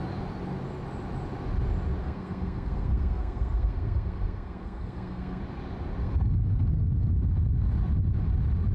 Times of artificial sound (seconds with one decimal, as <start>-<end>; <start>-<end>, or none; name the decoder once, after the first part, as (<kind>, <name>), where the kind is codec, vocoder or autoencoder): 2.0-5.4 (codec, SNAC); 6.0-7.1